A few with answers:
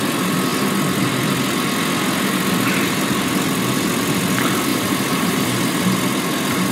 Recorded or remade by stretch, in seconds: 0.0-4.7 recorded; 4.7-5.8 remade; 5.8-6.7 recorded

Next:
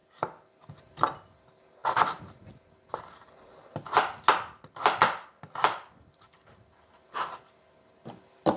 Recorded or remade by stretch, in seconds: 0.0-8.6 recorded

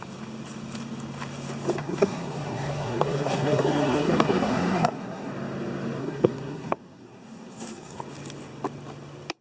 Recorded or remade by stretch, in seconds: 0.0-1.8 recorded; 1.8-5.3 remade; 5.3-6.0 recorded; 6.0-8.0 remade; 8.0-9.4 recorded

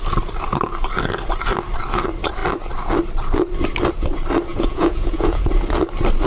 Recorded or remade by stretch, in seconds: 0.0-4.5 recorded; 4.5-5.5 remade; 5.5-6.3 recorded